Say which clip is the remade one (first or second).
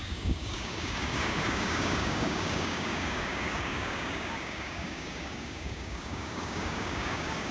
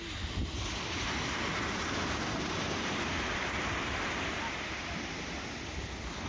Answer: first